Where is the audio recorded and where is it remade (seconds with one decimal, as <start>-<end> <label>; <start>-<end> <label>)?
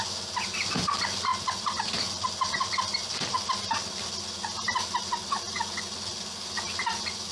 0.0-7.3 recorded